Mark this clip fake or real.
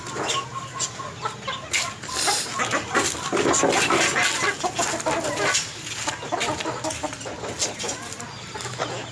real